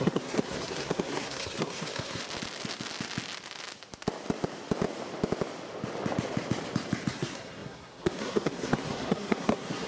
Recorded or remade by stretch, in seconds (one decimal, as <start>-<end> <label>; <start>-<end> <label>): 0.0-2.2 remade; 2.2-7.1 recorded; 7.1-9.9 remade